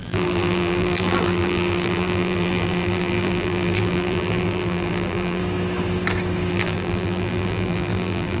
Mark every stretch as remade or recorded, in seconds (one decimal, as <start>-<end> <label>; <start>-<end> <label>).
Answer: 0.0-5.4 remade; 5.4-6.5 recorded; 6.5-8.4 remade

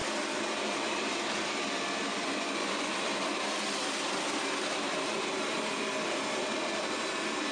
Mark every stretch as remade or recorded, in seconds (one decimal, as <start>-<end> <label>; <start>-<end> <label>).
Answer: 0.0-2.1 recorded; 2.1-2.9 remade; 2.9-7.5 recorded

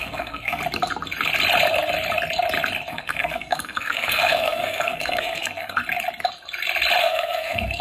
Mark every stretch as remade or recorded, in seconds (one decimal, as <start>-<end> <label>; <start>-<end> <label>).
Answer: 0.0-0.6 remade; 0.6-2.9 recorded; 2.9-5.8 remade; 5.8-7.0 recorded; 7.0-7.8 remade

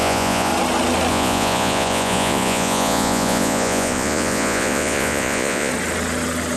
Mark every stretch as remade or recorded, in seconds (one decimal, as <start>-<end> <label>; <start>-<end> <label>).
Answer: 0.0-0.5 remade; 0.5-1.1 recorded; 1.1-5.7 remade; 5.7-6.6 recorded